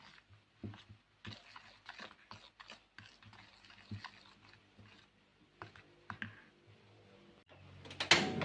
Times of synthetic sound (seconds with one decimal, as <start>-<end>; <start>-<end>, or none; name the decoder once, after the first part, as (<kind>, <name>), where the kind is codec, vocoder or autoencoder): none